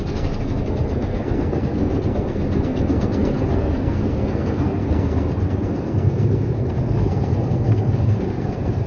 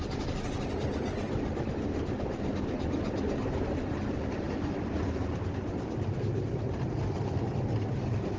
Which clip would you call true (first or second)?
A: second